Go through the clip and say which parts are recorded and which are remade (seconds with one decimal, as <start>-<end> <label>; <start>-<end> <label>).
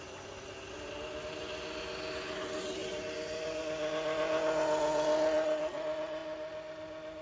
0.0-7.2 recorded